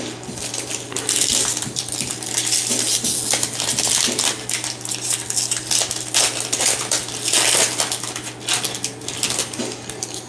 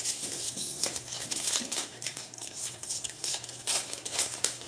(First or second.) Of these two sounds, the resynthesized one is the second